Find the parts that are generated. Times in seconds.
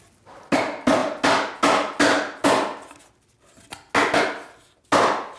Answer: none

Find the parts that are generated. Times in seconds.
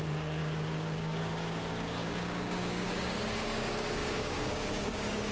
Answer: 0.0-5.3 (codec, DAC)